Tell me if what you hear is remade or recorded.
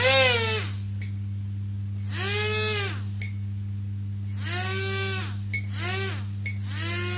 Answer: recorded